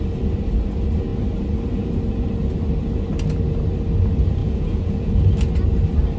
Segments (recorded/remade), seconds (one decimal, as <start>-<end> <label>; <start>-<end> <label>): 0.0-4.4 recorded; 4.4-5.1 remade; 5.1-6.2 recorded